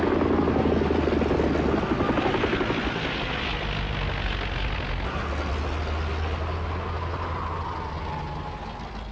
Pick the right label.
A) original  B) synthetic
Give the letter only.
A